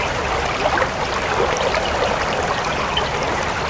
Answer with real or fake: fake